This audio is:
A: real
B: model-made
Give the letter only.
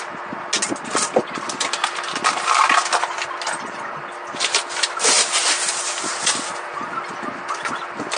A